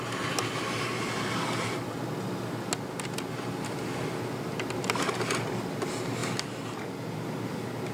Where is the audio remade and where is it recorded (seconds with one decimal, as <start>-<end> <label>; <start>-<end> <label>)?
0.0-7.9 recorded